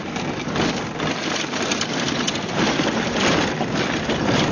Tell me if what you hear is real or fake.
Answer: real